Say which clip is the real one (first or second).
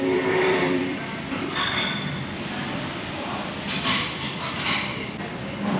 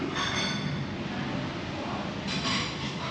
second